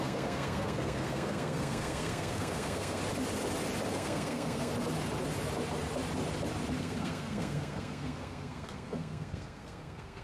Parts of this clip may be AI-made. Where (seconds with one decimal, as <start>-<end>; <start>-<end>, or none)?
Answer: 0.0-3.0; 3.9-4.7; 6.8-10.2